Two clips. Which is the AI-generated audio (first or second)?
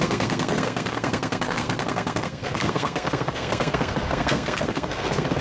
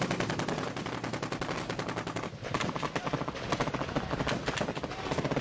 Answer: first